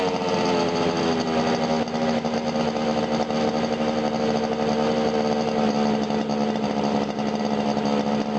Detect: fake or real real